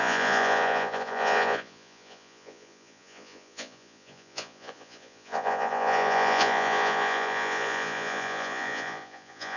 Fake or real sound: fake